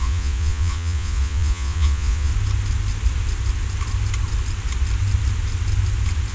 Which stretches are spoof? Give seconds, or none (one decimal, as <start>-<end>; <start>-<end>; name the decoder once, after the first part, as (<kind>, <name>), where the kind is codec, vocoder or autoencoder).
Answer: 0.0-2.3 (vocoder, Vocos)